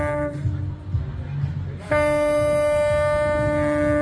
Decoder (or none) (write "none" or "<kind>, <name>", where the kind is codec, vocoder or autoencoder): none